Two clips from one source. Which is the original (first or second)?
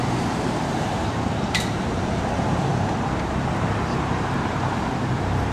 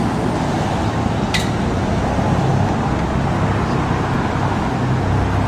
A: second